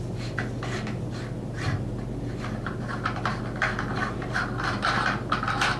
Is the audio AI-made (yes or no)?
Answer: no